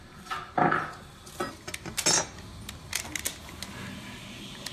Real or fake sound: real